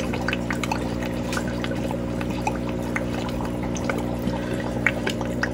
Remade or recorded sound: remade